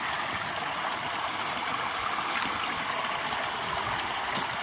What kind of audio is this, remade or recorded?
recorded